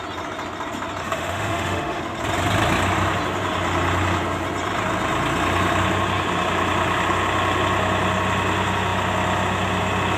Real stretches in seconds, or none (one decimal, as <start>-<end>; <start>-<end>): 0.0-1.0; 2.0-10.2